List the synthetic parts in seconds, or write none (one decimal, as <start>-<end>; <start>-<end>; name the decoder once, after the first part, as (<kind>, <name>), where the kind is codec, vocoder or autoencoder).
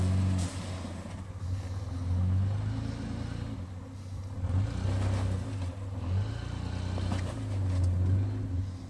none